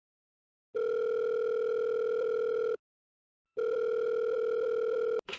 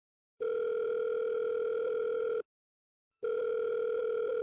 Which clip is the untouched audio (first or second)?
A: first